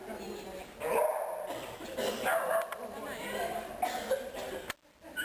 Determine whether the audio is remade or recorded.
recorded